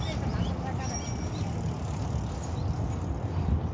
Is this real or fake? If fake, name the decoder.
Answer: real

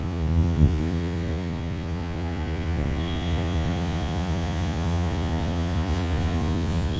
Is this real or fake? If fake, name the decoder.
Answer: fake, vocoder, Vocos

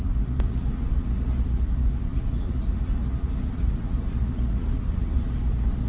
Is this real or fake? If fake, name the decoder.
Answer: fake, vocoder, Vocos